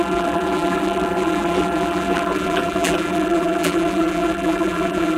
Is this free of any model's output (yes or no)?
no